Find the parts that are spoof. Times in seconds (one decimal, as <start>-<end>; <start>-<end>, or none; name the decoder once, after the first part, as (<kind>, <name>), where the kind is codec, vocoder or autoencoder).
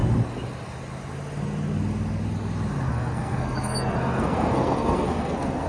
2.9-5.7 (codec, SNAC)